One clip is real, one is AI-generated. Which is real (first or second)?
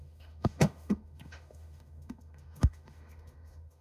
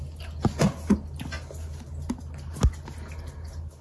second